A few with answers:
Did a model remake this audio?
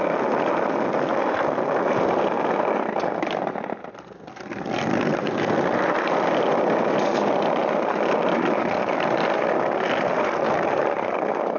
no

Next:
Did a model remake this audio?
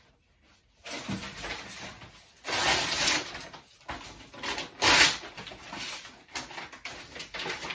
no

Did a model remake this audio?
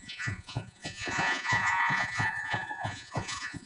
yes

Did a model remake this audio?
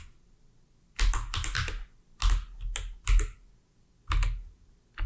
no